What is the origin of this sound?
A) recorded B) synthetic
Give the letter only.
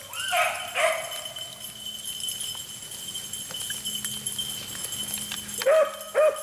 A